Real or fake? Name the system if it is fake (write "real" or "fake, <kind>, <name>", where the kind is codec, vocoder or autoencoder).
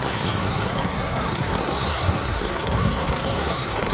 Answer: fake, codec, SNAC